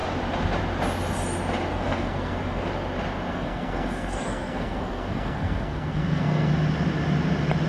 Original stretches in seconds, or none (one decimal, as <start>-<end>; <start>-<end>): 0.0-1.7; 2.7-3.3; 6.5-7.7